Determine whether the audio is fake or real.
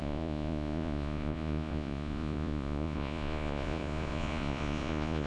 fake